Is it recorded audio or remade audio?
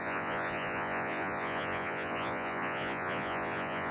remade